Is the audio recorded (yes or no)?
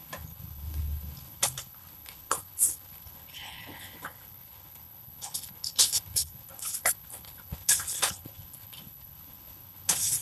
no